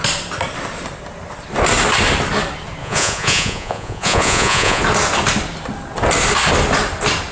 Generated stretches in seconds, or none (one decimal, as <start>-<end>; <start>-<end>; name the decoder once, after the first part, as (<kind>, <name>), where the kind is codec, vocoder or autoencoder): 2.8-4.8 (vocoder, Vocos)